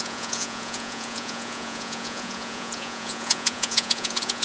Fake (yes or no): yes